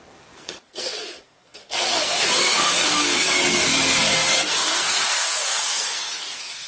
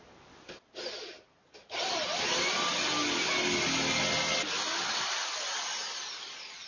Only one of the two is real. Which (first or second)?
second